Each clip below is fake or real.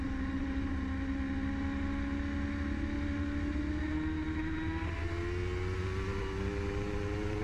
real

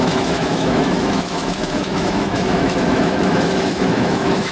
fake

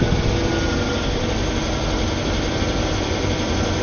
real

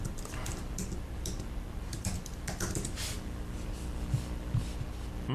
real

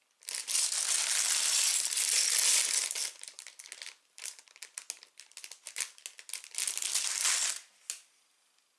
real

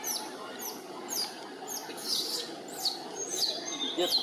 real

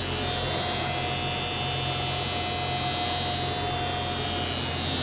real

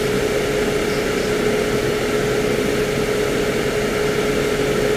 real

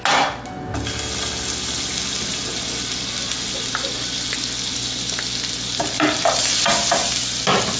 real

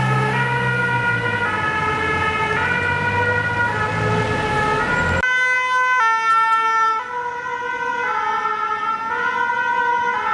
real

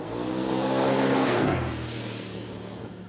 fake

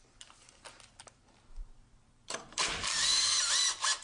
fake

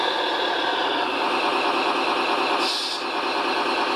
real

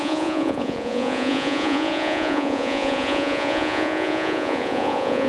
fake